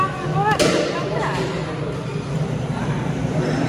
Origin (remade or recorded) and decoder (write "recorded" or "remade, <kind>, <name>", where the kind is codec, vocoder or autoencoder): recorded